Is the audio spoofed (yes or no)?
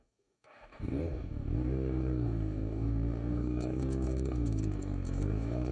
yes